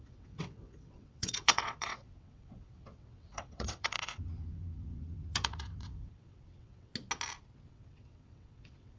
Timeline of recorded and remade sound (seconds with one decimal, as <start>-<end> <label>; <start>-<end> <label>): 0.0-6.9 remade; 6.9-7.7 recorded; 7.7-9.0 remade